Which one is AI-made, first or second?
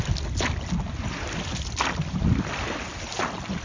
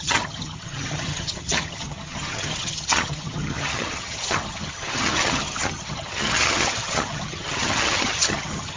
second